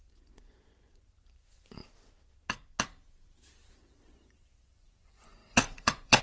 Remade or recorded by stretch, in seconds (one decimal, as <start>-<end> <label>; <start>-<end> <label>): 0.0-1.8 remade; 1.8-3.8 recorded; 3.8-6.2 remade